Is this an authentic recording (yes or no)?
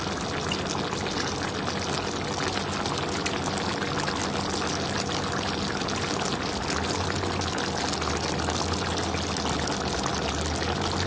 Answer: yes